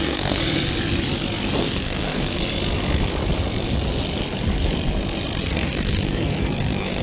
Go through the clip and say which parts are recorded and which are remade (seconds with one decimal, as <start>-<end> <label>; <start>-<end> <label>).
0.0-0.4 remade; 0.4-1.6 recorded; 1.6-2.4 remade; 2.4-5.4 recorded; 5.4-7.0 remade